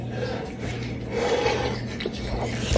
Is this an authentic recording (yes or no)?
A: yes